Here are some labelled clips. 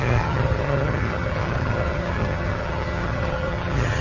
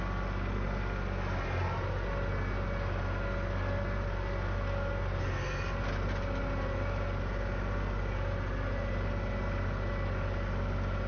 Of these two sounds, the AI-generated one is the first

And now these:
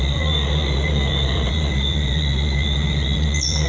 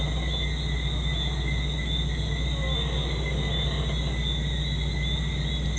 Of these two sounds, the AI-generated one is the first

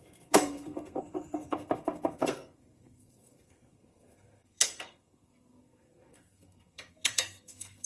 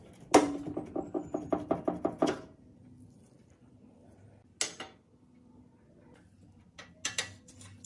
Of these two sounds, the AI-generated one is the first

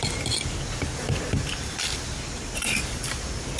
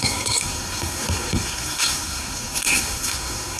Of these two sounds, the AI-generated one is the second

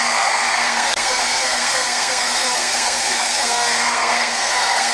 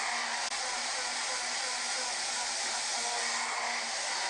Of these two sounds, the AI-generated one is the first